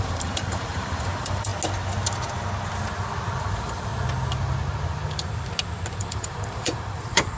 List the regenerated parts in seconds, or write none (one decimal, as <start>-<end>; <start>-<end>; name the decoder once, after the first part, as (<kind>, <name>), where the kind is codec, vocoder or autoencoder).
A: 0.0-1.5 (vocoder, BigVGAN v2); 3.4-3.9; 6.0-7.4